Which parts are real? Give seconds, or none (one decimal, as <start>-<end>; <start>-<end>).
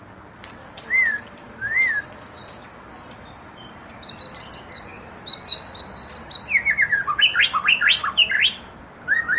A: 0.0-0.6; 4.5-9.4